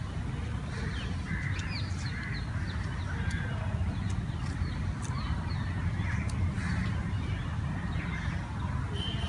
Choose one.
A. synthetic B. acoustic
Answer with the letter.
B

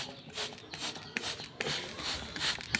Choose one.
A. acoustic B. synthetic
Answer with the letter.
A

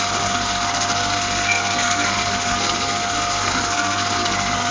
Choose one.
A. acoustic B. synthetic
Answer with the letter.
B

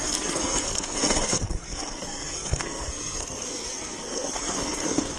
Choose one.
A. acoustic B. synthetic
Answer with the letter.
B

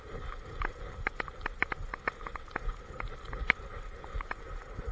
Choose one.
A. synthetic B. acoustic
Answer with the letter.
B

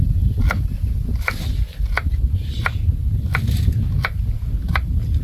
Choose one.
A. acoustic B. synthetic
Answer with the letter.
A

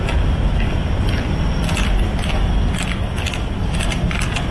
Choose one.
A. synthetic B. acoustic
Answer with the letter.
B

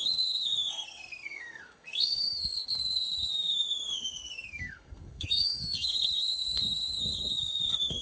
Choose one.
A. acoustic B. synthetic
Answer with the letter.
B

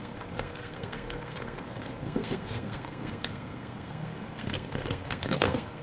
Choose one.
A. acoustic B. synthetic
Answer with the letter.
B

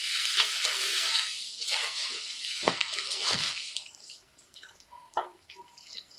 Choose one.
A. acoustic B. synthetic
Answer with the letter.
B